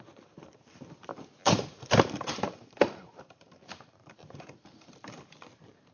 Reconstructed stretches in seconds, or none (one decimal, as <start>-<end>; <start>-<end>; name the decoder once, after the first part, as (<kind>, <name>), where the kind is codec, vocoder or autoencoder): 0.0-5.9 (vocoder, BigVGAN v2)